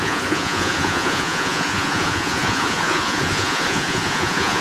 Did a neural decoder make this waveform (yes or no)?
yes